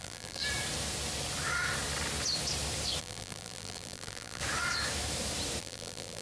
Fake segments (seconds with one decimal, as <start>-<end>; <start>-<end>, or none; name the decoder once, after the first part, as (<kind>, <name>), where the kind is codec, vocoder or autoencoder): 0.0-0.4 (vocoder, BigVGAN v2); 3.0-4.4; 5.6-6.2